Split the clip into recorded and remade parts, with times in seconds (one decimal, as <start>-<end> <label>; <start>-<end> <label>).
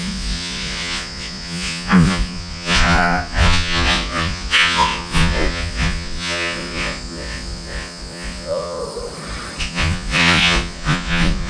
0.0-8.8 remade; 8.8-9.6 recorded; 9.6-11.5 remade